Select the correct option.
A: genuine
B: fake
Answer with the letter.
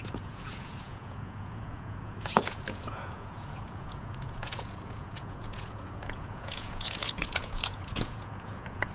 B